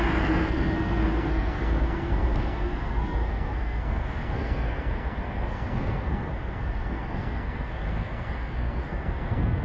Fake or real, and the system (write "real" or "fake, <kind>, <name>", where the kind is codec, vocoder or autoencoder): fake, codec, SNAC